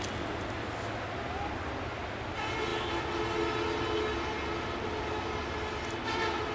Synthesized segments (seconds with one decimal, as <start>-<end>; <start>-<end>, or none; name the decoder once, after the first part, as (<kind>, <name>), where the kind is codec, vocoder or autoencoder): none